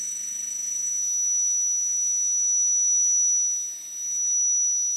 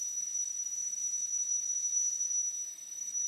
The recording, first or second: first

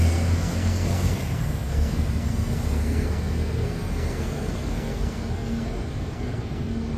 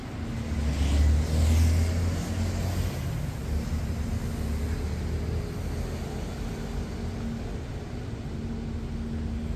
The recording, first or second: second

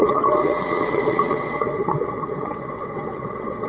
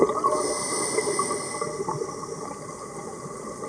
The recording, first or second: second